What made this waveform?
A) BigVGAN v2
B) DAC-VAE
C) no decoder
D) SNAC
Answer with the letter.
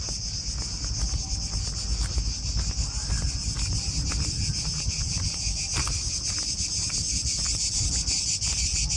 C